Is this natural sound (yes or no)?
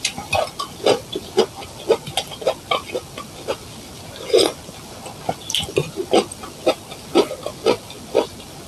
yes